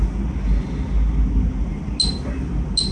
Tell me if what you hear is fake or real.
real